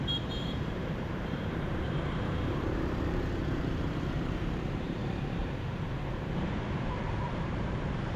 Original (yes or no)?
no